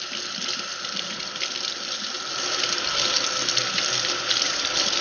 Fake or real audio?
real